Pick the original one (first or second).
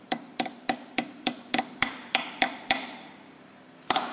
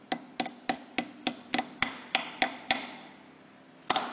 second